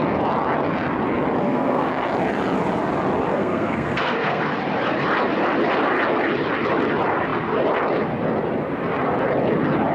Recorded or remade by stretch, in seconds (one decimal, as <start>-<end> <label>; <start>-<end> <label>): 0.0-1.4 recorded; 1.4-1.9 remade; 1.9-3.3 recorded; 3.3-4.4 remade; 4.4-9.9 recorded